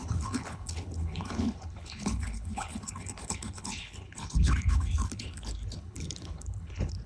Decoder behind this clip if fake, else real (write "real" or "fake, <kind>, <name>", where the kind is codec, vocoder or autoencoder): fake, codec, HILCodec